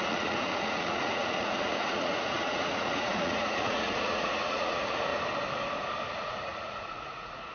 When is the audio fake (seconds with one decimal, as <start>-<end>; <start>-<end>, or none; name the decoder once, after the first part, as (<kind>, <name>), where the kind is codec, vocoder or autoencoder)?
0.0-5.1 (vocoder, Vocos); 6.1-7.5

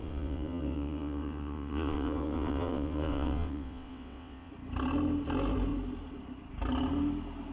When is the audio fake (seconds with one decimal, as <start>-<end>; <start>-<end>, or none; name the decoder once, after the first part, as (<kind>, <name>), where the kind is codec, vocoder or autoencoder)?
0.0-4.5 (vocoder, WaveNeXt)

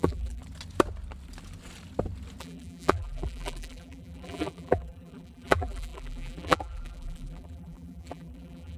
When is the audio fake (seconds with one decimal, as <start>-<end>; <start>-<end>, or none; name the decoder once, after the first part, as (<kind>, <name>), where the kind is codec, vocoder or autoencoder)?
0.0-0.4 (vocoder, BigVGAN v2); 2.4-8.8

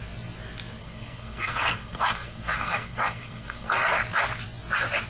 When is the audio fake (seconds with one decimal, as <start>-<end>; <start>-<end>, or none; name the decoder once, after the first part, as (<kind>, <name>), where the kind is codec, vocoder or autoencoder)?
0.8-3.9 (codec, SNAC)

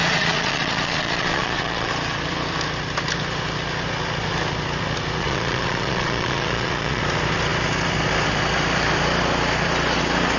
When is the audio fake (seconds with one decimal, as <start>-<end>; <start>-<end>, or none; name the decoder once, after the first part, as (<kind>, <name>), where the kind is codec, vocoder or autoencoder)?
0.0-1.9 (vocoder, Vocos); 5.2-7.0